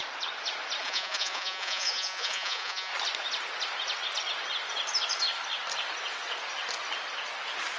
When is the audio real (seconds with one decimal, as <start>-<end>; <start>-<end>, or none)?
0.0-0.8; 2.9-7.8